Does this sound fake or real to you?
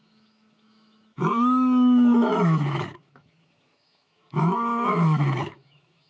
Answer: fake